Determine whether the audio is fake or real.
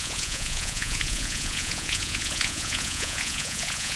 fake